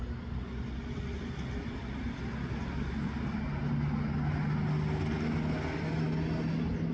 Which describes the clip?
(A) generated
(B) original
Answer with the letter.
B